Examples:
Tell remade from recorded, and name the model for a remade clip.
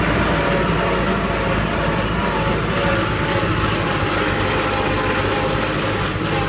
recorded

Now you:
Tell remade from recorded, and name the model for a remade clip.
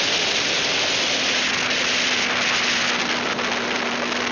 recorded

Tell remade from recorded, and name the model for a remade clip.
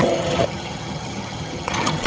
remade, vocoder, HiFi-GAN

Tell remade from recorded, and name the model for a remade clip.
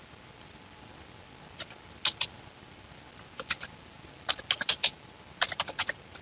recorded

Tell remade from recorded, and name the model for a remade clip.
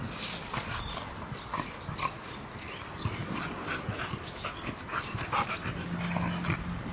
recorded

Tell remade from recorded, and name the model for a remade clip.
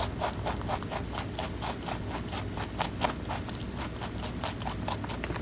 recorded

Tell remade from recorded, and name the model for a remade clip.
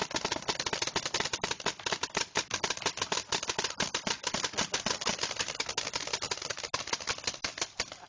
recorded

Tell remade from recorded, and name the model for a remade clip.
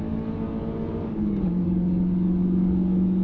remade, codec, DAC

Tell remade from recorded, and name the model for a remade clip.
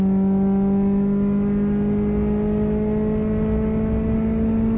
recorded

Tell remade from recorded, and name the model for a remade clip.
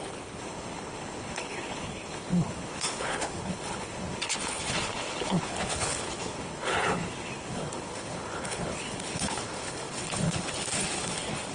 remade, codec, HILCodec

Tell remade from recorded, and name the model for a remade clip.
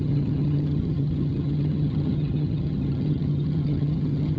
remade, vocoder, HiFi-GAN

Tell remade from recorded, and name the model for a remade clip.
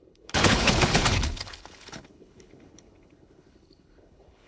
remade, codec, HILCodec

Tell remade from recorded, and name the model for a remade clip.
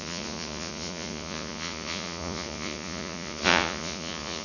remade, vocoder, Vocos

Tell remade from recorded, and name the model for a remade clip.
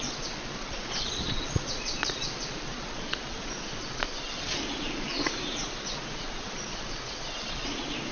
remade, vocoder, Vocos